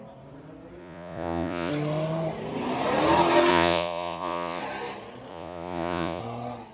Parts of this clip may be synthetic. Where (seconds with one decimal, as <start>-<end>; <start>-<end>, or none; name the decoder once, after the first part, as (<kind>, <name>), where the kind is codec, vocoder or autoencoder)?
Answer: 0.8-1.7 (vocoder, Vocos); 3.5-4.6; 5.3-6.2